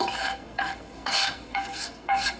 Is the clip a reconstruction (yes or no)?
yes